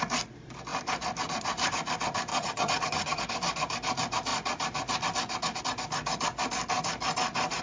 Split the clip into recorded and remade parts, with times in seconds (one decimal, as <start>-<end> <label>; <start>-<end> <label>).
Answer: 0.0-2.3 recorded; 2.3-3.2 remade; 3.2-7.6 recorded